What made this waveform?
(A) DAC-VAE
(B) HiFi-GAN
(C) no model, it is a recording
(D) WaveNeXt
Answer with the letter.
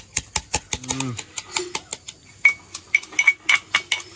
C